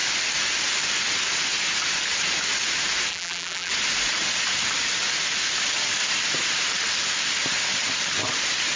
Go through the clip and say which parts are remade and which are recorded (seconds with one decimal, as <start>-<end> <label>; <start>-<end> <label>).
0.0-3.1 recorded; 3.1-3.7 remade; 3.7-8.8 recorded